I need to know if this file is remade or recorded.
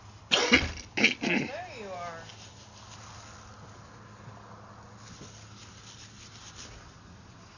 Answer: recorded